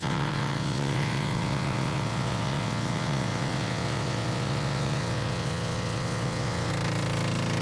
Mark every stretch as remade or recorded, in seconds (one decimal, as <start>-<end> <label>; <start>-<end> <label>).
0.0-6.7 remade; 6.7-7.6 recorded